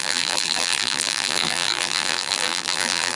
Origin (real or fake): fake